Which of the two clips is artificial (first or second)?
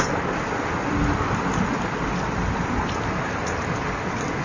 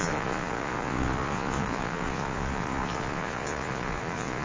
second